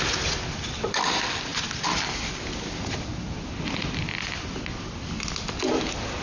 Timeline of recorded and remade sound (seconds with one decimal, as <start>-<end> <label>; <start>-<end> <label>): 0.0-6.2 recorded